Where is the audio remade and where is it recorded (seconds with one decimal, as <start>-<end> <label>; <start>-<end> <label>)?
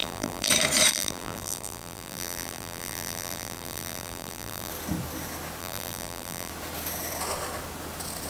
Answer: 0.0-0.5 remade; 0.5-0.9 recorded; 0.9-4.7 remade; 4.7-5.6 recorded; 5.6-6.5 remade; 6.5-8.3 recorded